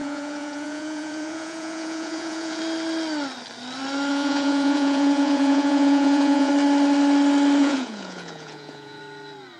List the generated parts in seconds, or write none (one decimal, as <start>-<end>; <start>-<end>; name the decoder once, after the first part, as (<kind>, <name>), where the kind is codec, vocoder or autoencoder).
0.0-2.6 (vocoder, Vocos); 4.1-6.5; 7.6-9.0